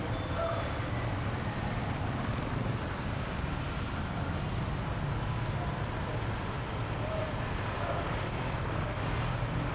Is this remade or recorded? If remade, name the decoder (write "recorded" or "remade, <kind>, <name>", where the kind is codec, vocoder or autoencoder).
recorded